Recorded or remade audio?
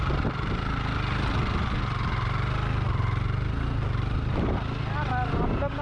recorded